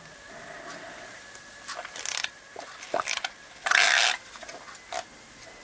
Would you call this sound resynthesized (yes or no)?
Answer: no